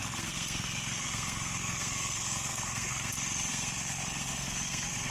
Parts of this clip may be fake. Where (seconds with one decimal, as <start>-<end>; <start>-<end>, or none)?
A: 0.0-3.1; 3.5-5.1